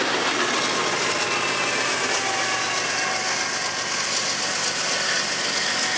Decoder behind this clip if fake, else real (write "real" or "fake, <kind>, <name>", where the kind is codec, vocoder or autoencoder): real